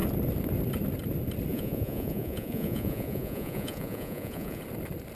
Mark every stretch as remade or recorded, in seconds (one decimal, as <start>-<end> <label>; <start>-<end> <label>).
0.0-1.5 recorded; 1.5-4.6 remade; 4.6-5.1 recorded